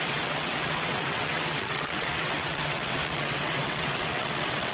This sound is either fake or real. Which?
fake